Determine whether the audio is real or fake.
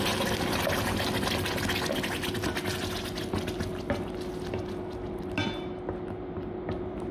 real